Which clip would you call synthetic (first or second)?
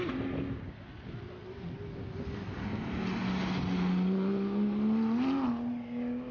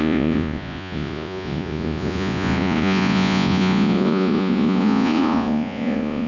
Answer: second